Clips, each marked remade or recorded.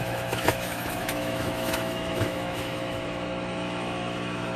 remade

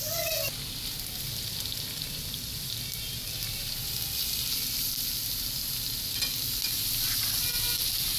recorded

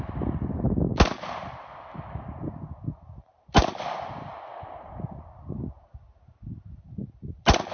recorded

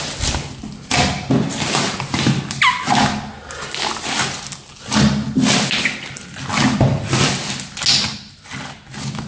recorded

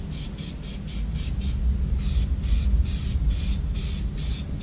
recorded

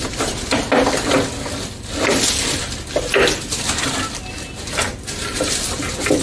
recorded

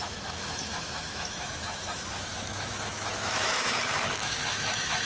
remade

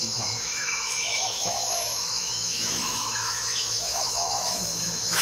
remade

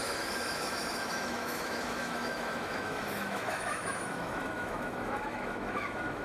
remade